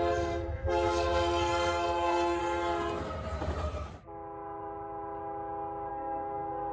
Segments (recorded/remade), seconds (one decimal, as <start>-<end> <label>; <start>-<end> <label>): 0.0-2.4 remade; 2.4-5.9 recorded; 5.9-6.7 remade